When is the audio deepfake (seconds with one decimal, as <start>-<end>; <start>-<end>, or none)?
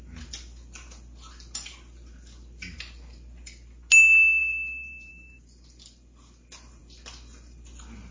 4.4-5.1